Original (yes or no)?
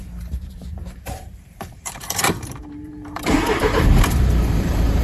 no